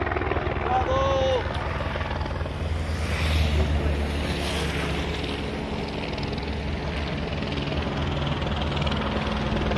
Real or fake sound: real